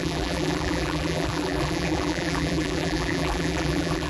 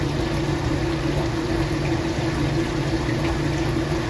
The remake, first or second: first